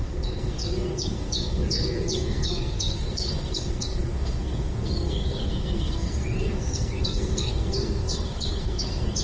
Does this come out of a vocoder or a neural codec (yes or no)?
yes